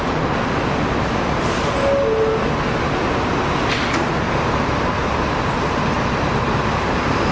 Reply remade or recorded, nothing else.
recorded